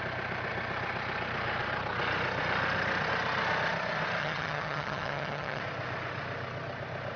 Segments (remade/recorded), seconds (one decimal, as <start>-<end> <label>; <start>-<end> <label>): 0.0-4.2 recorded; 4.2-5.6 remade; 5.6-7.2 recorded